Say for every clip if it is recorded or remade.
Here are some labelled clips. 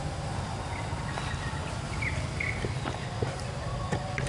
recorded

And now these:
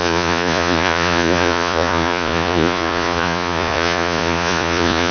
remade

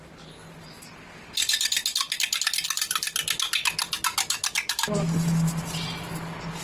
recorded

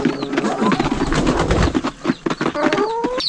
recorded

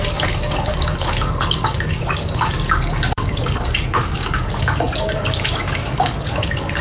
remade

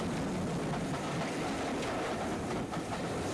recorded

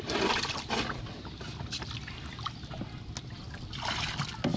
recorded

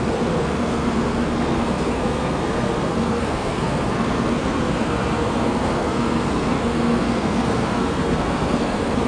remade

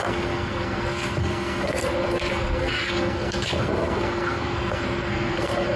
remade